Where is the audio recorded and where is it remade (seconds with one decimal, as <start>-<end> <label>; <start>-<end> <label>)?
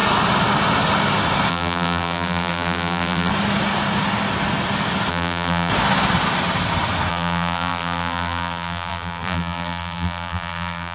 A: 0.0-1.5 recorded; 1.5-3.3 remade; 3.3-5.1 recorded; 5.1-5.7 remade; 5.7-7.1 recorded; 7.1-10.9 remade